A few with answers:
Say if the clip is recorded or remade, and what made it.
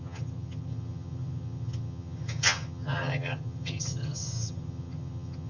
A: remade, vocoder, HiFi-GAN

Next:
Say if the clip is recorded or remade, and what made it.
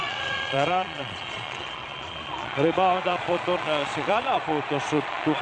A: remade, vocoder, Vocos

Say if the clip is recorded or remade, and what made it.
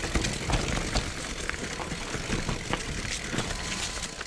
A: recorded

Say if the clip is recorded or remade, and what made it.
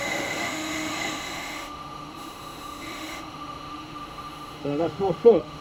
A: remade, autoencoder, DAC-VAE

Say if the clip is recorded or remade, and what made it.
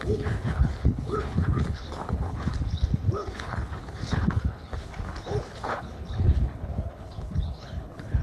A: remade, codec, HILCodec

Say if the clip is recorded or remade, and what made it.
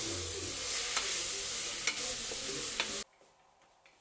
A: recorded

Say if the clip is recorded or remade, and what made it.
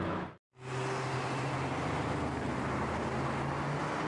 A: recorded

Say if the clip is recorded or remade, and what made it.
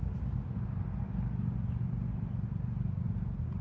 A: recorded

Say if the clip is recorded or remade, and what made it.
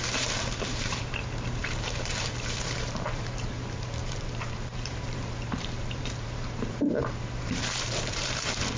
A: remade, vocoder, BigVGAN v2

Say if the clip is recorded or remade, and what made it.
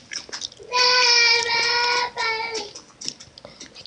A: recorded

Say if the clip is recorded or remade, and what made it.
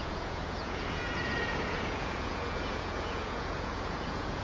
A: remade, vocoder, Vocos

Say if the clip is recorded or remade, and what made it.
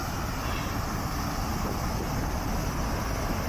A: recorded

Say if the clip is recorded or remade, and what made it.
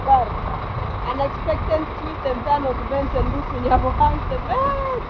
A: recorded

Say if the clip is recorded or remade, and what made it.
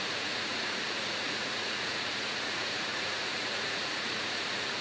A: remade, vocoder, Vocos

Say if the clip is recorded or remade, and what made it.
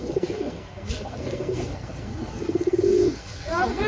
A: remade, codec, SNAC